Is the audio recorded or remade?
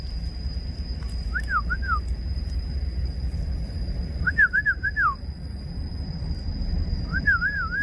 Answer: remade